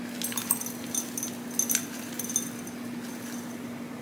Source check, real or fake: real